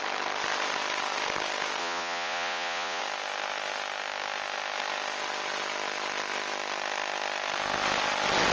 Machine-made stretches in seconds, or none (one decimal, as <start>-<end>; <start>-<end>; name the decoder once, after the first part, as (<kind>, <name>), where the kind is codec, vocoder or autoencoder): 1.8-3.0 (vocoder, Vocos)